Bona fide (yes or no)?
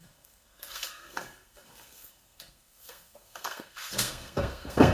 no